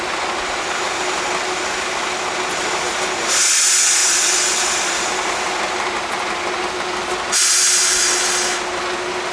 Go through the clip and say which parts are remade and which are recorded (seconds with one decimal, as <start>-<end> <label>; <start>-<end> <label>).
0.0-9.3 recorded